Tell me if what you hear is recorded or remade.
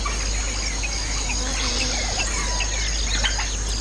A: recorded